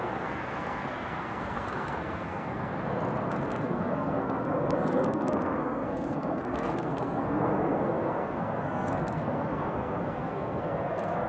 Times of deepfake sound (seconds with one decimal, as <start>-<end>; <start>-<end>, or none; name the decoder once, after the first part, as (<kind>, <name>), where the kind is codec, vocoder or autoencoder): 0.0-2.7 (codec, SNAC); 3.3-11.3